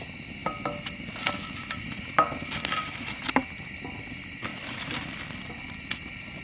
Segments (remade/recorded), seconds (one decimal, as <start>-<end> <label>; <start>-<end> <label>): 0.0-4.5 recorded; 4.5-5.1 remade; 5.1-6.4 recorded